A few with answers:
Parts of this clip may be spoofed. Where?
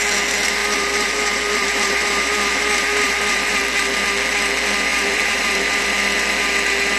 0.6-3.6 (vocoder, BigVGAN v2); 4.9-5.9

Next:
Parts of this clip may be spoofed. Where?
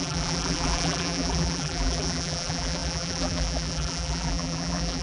0.0-5.0 (vocoder, BigVGAN v2)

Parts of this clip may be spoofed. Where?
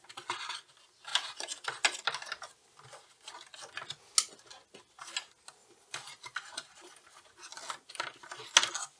5.6-7.1 (vocoder, BigVGAN v2)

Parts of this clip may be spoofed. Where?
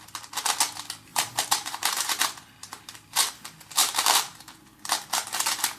1.1-2.2 (vocoder, BigVGAN v2); 2.6-3.3; 3.8-4.5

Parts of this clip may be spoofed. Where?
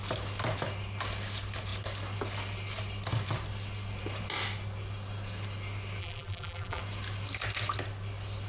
6.0-6.8 (vocoder, BigVGAN v2)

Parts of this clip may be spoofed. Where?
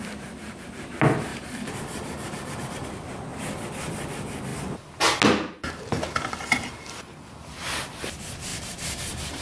1.3-2.9 (vocoder, BigVGAN v2); 8.5-9.4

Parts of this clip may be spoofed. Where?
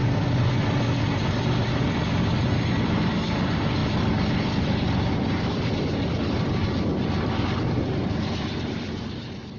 0.0-9.6 (vocoder, BigVGAN v2)